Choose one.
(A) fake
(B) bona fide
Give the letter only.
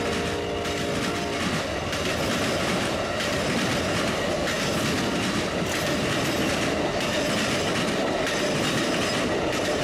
B